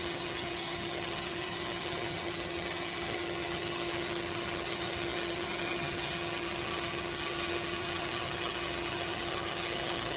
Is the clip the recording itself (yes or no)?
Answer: no